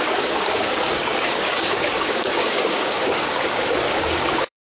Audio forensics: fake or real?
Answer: fake